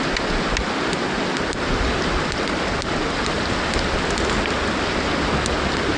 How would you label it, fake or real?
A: real